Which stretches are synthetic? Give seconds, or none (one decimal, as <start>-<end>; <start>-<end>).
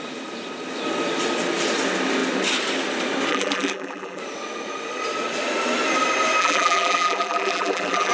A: 3.3-4.2; 6.4-8.1